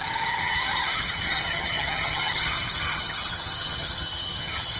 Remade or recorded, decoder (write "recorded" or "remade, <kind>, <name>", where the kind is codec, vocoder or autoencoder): remade, vocoder, HiFi-GAN